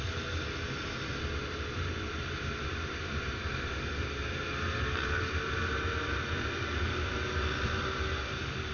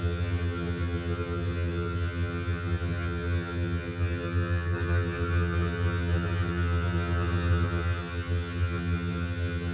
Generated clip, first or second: second